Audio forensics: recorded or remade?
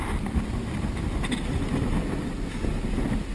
recorded